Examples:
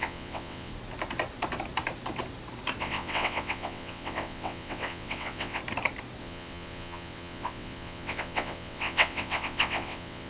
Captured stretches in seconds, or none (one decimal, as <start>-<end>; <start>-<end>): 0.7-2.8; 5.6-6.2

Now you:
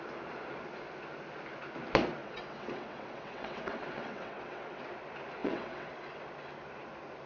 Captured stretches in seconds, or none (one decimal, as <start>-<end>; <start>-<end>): 0.0-2.2; 4.8-5.4; 5.9-7.3

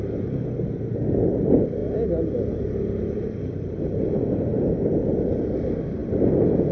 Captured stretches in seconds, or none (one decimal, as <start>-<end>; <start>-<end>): 0.0-6.7

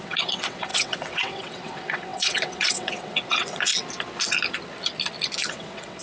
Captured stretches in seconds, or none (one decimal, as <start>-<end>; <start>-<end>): 3.7-5.5

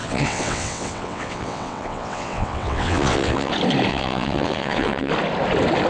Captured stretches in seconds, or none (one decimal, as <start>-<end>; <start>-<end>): 3.5-3.9; 5.1-5.9

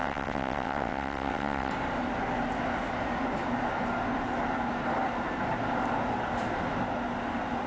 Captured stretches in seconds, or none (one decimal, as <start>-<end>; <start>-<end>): 1.7-7.7

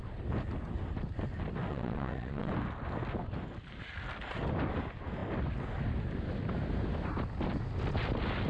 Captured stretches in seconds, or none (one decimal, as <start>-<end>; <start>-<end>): 0.0-1.7; 2.5-8.5